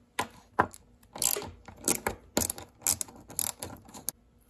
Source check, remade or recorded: recorded